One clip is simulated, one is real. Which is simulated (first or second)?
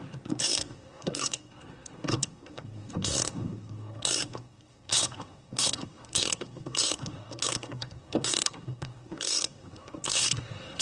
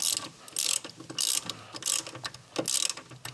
first